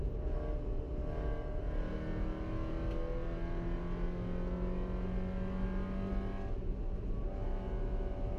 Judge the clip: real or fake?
real